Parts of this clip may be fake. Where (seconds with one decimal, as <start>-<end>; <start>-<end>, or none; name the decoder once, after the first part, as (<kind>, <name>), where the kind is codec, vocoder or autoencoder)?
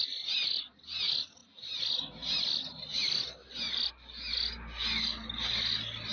none